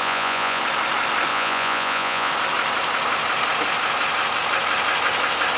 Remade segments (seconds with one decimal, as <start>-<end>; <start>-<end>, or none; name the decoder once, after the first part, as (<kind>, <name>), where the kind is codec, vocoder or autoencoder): 0.0-0.6 (vocoder, Vocos); 1.3-2.3